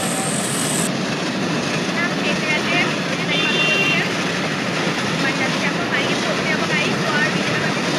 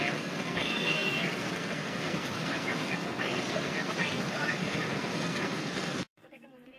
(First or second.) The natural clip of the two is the first